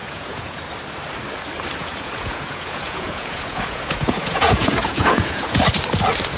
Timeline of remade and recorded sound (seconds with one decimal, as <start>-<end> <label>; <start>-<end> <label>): 0.0-0.6 remade; 0.6-1.8 recorded; 1.8-5.6 remade; 5.6-6.4 recorded